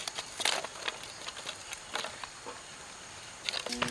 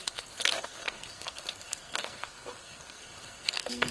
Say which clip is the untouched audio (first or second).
first